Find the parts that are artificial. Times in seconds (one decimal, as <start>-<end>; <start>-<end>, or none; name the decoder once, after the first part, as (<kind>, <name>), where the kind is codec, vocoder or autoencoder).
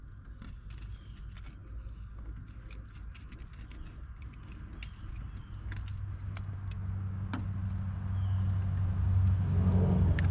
none